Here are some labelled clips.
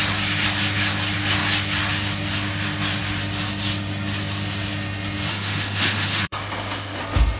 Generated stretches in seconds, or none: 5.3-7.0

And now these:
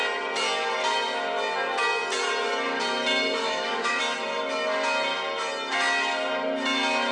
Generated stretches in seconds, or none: 3.4-4.0

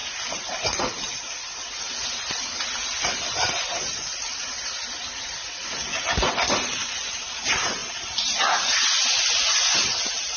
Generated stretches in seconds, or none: none

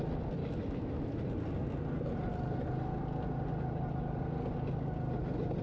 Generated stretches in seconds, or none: 0.4-1.2

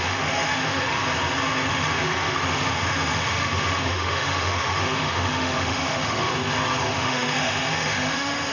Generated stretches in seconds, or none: 0.0-1.0; 1.7-6.3; 6.9-8.5

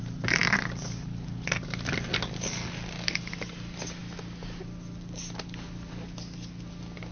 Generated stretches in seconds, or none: none

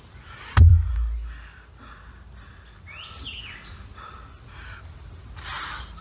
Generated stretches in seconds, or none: none

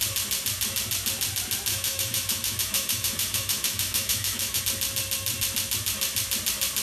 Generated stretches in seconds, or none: 1.7-4.6